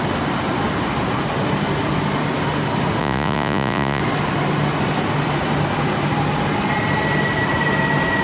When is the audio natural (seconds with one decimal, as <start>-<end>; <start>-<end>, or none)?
0.0-3.0; 4.0-8.2